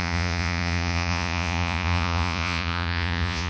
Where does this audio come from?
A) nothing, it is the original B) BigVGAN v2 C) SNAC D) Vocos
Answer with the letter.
D